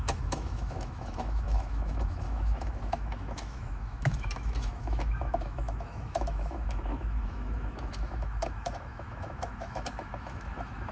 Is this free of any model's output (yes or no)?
no